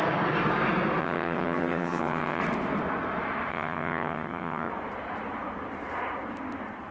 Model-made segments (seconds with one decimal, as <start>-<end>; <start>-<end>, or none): 1.0-2.4; 3.5-4.7